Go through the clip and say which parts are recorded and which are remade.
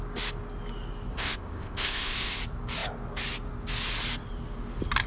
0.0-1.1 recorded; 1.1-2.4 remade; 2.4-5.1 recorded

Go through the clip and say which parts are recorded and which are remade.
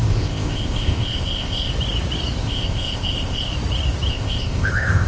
0.0-1.7 remade; 1.7-2.4 recorded; 2.4-3.5 remade; 3.5-4.1 recorded; 4.1-5.1 remade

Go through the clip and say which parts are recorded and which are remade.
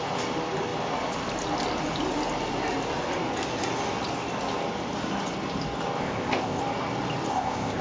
0.0-6.0 recorded; 6.0-6.6 remade; 6.6-7.3 recorded; 7.3-7.8 remade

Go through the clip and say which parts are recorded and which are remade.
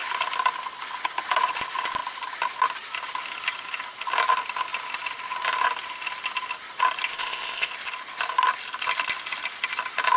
0.0-7.1 recorded; 7.1-7.7 remade; 7.7-10.2 recorded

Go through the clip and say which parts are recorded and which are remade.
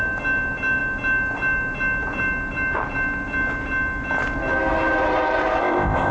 0.0-5.6 recorded; 5.6-6.1 remade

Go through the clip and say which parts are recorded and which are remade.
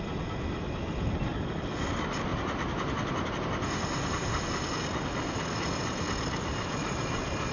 0.0-7.5 recorded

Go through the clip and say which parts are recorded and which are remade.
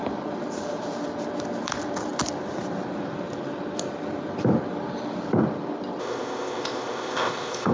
0.0-6.0 recorded; 6.0-7.7 remade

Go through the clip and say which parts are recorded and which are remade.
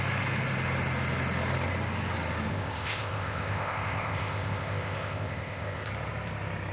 0.0-2.5 recorded; 2.5-5.9 remade; 5.9-6.7 recorded